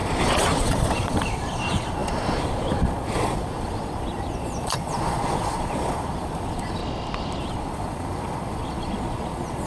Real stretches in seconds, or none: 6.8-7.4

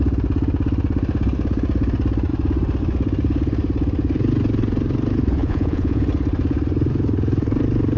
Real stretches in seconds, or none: 0.0-5.4; 6.0-8.0

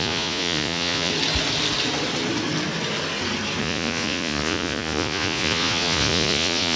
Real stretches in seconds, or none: 1.1-3.6

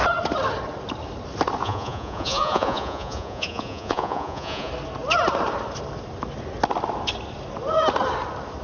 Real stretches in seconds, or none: 0.0-1.6; 4.7-8.6

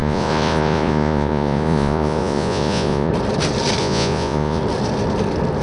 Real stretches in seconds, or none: 3.1-3.8; 4.6-5.6

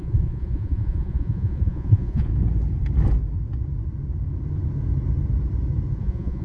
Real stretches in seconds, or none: 2.3-6.0

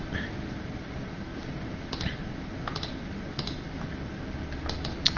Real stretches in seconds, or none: 0.0-5.2

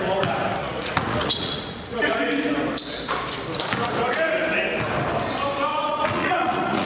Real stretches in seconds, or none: 0.0-0.6; 2.2-5.7